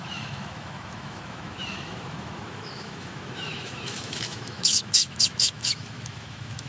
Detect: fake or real fake